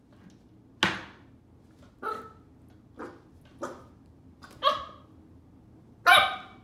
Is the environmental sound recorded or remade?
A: recorded